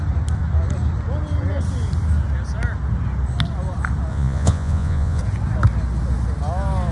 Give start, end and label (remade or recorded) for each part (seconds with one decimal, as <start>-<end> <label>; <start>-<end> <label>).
0.0-4.1 recorded; 4.1-5.2 remade; 5.2-6.9 recorded